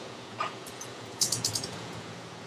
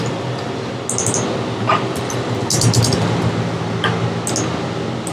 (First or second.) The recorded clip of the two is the second